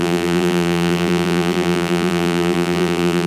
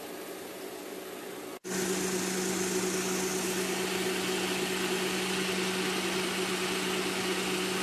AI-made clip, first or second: first